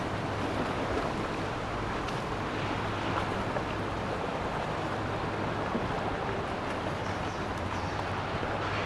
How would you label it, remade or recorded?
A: recorded